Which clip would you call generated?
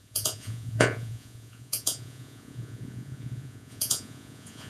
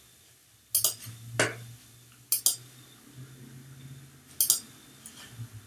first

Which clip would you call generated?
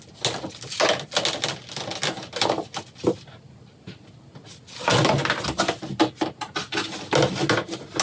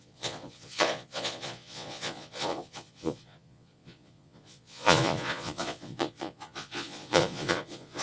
second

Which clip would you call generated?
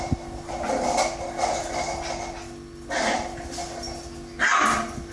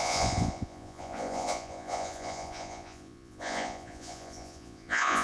second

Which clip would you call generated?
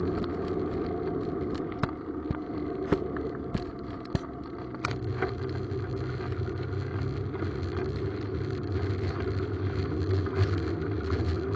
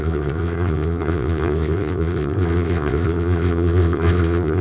second